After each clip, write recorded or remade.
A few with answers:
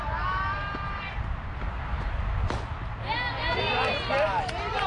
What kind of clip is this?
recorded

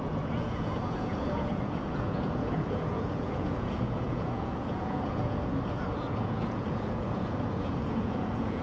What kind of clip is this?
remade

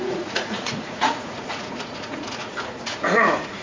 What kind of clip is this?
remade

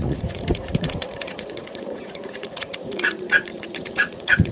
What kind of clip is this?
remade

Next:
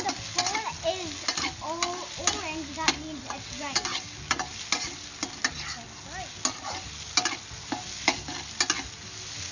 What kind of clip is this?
recorded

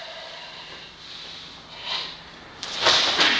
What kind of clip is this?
recorded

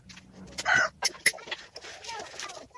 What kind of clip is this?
recorded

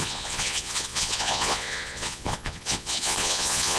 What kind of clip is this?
remade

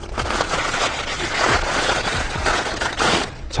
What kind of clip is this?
remade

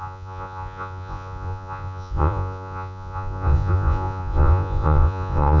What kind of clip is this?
remade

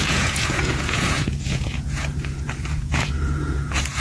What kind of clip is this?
remade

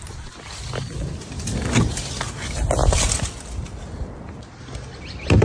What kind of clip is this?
recorded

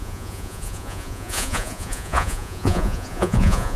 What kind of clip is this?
remade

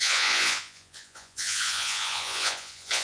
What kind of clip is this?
remade